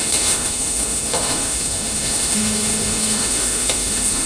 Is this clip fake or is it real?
fake